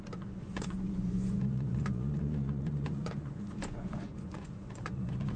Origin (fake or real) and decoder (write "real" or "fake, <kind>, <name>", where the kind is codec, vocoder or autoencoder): fake, vocoder, Vocos